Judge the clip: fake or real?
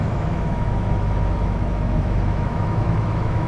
fake